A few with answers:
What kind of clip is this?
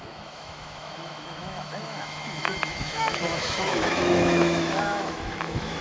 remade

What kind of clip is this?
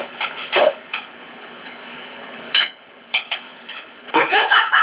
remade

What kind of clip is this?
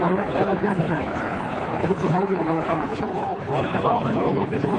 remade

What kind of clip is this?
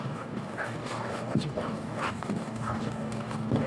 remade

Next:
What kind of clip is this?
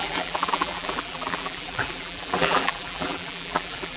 remade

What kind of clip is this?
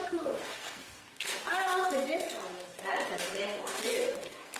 remade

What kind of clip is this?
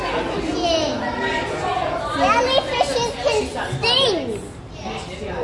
recorded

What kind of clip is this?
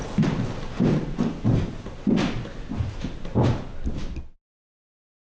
recorded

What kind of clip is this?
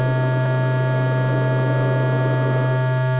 recorded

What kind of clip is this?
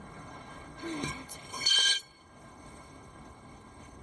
remade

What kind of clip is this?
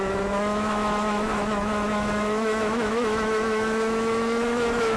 remade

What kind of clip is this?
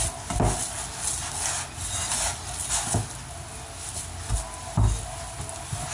recorded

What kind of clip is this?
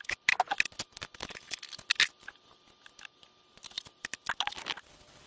recorded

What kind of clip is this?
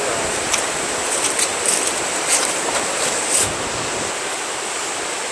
recorded